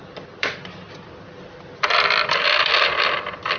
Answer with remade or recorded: remade